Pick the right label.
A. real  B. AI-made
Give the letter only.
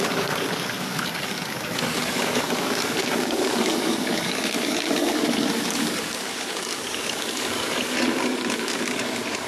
B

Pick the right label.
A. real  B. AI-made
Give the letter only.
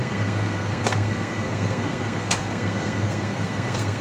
B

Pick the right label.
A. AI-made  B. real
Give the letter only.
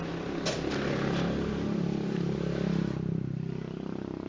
B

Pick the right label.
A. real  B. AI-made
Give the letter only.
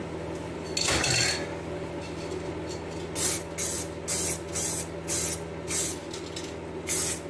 A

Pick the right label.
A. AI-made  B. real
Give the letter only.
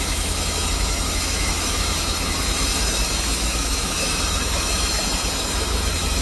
A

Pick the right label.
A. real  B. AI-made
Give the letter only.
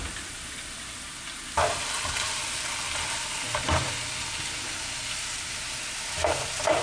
A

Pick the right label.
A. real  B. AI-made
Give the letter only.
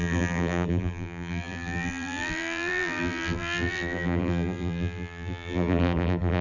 B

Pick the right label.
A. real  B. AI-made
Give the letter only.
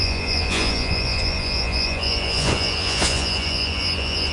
B